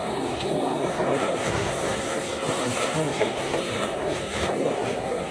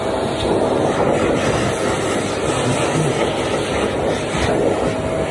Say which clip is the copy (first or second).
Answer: first